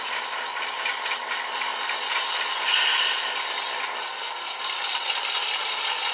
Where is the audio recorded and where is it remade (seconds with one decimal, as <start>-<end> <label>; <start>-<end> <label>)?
0.0-6.1 recorded